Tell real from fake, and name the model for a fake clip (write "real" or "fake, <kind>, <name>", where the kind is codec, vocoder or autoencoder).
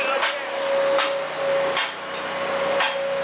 real